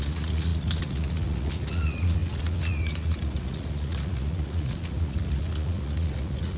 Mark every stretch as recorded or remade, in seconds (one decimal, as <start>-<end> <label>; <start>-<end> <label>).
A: 0.0-6.6 remade

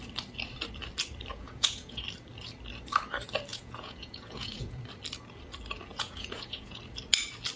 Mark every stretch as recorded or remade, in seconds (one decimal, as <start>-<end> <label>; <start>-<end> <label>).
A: 0.0-1.3 recorded; 1.3-2.0 remade; 2.0-3.5 recorded; 3.5-4.8 remade; 4.8-5.9 recorded; 5.9-6.8 remade; 6.8-7.6 recorded